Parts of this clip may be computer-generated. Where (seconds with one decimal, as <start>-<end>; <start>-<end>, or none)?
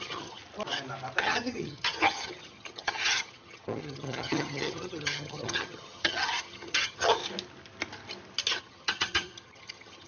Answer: 0.0-0.4; 1.2-7.2; 8.6-10.1